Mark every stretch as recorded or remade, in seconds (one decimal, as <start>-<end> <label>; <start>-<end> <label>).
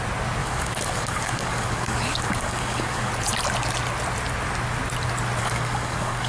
0.0-0.4 recorded; 0.4-3.1 remade; 3.1-5.4 recorded; 5.4-6.3 remade